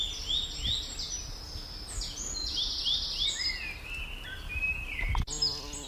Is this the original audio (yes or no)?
yes